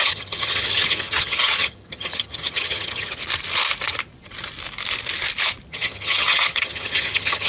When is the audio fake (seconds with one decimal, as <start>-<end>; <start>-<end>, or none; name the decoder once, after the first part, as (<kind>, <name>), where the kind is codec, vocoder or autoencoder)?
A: 0.0-3.2 (vocoder, HiFi-GAN); 5.7-7.5